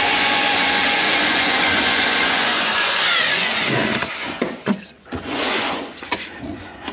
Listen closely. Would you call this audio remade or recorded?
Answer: remade